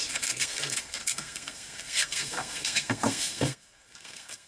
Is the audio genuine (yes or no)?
no